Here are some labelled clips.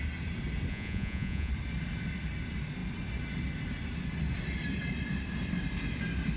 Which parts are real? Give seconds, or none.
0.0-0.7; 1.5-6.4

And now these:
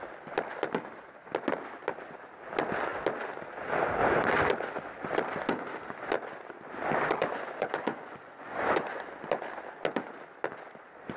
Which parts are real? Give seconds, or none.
0.0-7.2; 9.1-11.2

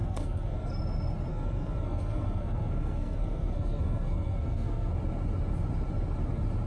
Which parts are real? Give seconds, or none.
0.8-1.3; 4.9-6.7